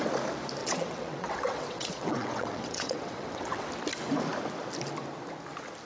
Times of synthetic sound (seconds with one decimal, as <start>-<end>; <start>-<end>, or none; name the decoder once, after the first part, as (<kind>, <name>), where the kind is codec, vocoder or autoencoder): 0.6-3.7 (vocoder, WaveNeXt)